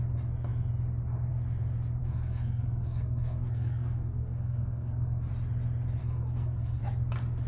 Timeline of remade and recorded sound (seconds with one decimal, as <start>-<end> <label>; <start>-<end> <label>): 0.0-2.0 recorded; 2.0-5.3 remade; 5.3-6.0 recorded; 6.0-6.8 remade; 6.8-7.5 recorded